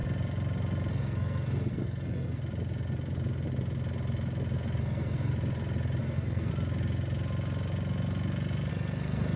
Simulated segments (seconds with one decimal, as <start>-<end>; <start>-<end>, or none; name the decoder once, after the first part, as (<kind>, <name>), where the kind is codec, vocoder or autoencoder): 0.9-2.4 (codec, SNAC); 4.8-5.3; 6.0-6.5; 8.7-9.4